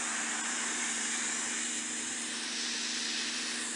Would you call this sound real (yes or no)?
no